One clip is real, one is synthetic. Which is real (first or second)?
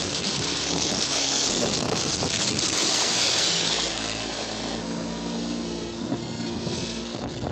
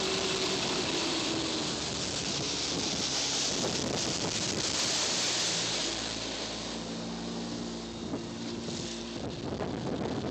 second